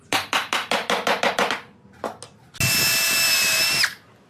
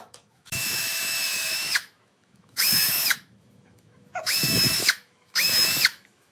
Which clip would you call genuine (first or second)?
first